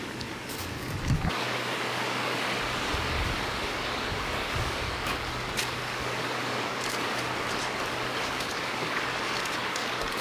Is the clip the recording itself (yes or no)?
no